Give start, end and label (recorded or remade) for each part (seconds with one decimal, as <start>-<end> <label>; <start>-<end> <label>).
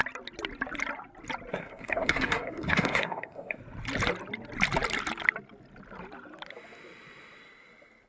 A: 0.0-1.5 recorded; 1.5-3.6 remade; 3.6-8.1 recorded